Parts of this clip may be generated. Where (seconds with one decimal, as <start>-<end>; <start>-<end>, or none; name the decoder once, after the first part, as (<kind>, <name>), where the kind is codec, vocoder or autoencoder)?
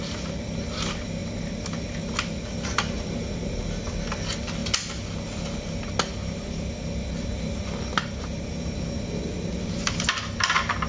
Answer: none